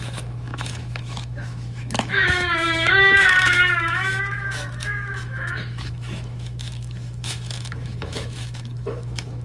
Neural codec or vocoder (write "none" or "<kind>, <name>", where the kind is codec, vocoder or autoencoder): autoencoder, DAC-VAE